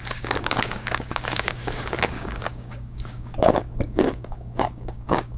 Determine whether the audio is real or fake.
fake